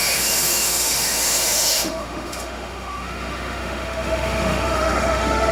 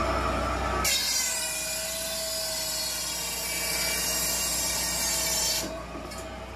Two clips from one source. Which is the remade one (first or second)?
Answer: first